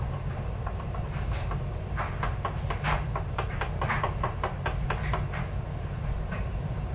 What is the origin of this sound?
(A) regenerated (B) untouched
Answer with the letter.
A